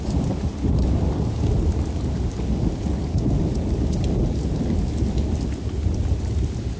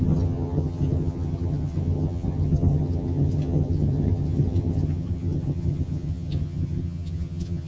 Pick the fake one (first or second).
second